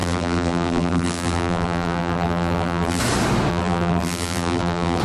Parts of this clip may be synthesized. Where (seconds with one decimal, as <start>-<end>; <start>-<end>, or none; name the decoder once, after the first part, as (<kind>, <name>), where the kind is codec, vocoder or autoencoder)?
0.0-3.0 (vocoder, BigVGAN v2); 3.5-5.0